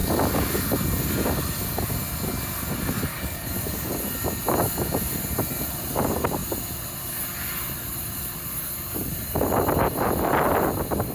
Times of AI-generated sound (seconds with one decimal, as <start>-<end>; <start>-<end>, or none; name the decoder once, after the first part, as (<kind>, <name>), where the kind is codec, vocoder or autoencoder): 3.1-4.0 (codec, DAC)